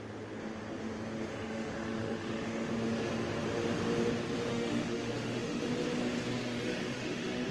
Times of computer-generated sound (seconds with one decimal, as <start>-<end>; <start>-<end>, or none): 1.3-2.7; 4.5-5.7; 6.4-7.5